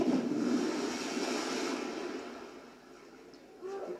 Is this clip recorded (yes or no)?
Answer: yes